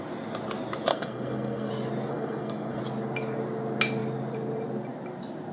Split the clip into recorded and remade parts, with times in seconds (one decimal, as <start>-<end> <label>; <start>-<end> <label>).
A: 0.0-0.9 recorded; 0.9-1.7 remade; 1.7-2.1 recorded; 2.1-2.8 remade; 2.8-5.5 recorded